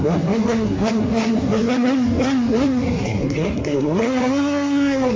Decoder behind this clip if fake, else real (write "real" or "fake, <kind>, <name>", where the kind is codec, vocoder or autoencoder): fake, codec, SNAC